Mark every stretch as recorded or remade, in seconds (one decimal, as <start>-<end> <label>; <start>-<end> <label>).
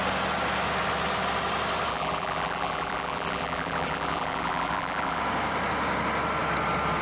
0.0-1.9 recorded; 1.9-5.2 remade; 5.2-7.0 recorded